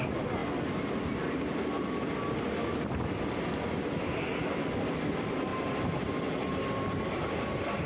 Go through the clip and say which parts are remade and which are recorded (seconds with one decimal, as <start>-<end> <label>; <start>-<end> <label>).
0.0-5.5 recorded; 5.5-6.1 remade; 6.1-7.9 recorded